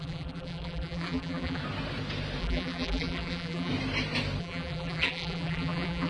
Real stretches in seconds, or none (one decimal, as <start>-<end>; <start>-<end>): 1.6-2.4; 3.7-4.4